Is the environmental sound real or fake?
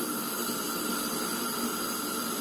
real